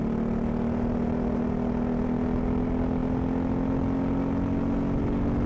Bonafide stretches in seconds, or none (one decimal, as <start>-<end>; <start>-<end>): 0.0-5.5